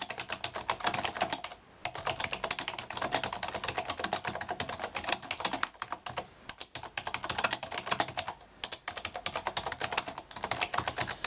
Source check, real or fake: real